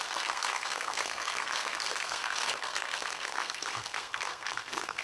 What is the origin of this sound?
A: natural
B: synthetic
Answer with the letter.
B